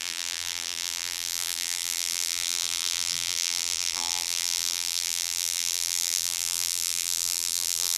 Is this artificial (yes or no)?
yes